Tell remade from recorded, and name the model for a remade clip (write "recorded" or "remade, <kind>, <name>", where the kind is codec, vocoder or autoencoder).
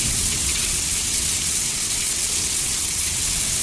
remade, vocoder, WaveNeXt